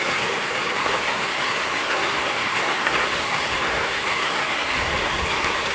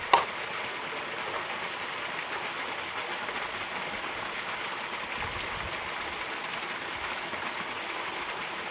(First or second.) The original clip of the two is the second